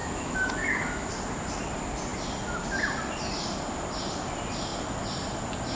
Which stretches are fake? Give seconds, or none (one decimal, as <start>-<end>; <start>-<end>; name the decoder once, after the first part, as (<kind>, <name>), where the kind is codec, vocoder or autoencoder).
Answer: 0.0-1.1 (autoencoder, DAC-VAE)